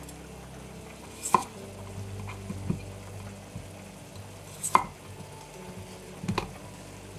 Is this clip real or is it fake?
real